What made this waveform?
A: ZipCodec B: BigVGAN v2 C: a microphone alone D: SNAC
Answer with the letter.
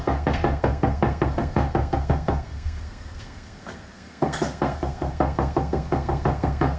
D